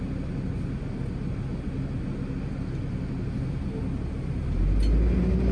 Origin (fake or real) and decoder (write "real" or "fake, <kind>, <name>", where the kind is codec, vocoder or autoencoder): real